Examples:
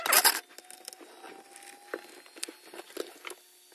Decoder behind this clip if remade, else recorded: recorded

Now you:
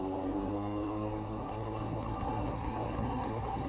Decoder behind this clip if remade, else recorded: remade, codec, SNAC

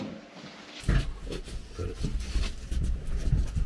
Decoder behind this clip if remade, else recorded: recorded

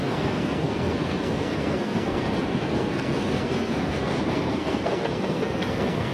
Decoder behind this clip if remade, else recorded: remade, codec, SNAC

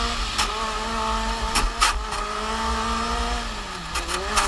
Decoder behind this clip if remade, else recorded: recorded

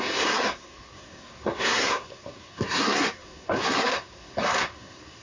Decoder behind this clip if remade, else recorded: remade, codec, SNAC